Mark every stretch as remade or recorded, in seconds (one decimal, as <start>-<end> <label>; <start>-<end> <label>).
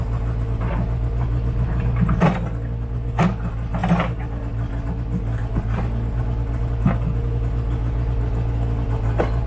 0.0-9.5 recorded